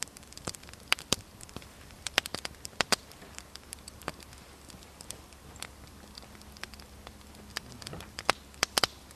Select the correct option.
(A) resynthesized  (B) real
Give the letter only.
A